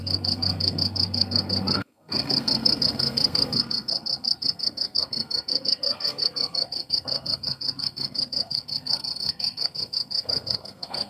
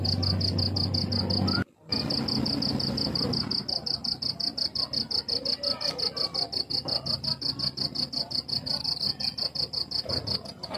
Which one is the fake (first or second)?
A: first